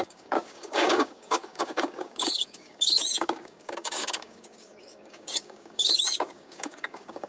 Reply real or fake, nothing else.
fake